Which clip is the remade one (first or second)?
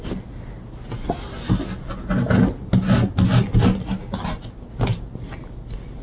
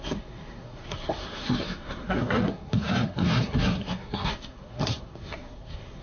second